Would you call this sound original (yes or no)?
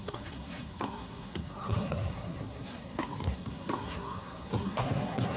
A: no